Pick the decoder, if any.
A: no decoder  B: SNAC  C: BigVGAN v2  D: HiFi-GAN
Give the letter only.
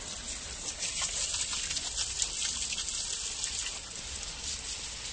A